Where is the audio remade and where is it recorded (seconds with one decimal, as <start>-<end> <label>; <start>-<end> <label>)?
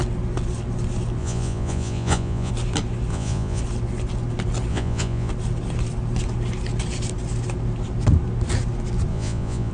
0.0-1.2 recorded; 1.2-2.5 remade; 2.5-3.1 recorded; 3.1-3.6 remade; 3.6-4.7 recorded; 4.7-5.3 remade; 5.3-9.1 recorded; 9.1-9.7 remade